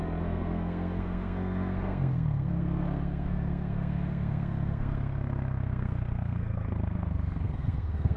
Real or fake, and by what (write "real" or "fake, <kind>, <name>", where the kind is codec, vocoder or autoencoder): fake, codec, SNAC